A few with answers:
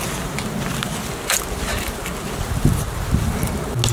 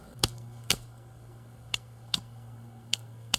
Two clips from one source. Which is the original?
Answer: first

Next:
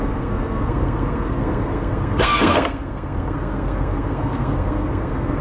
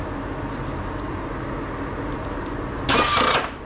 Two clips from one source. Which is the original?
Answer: second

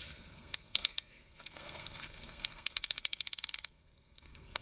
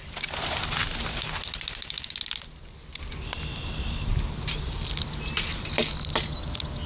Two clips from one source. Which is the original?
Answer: second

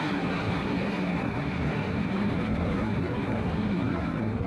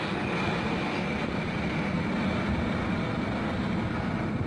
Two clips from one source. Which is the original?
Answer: second